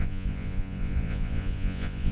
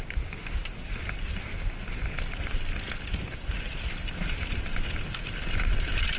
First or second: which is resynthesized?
first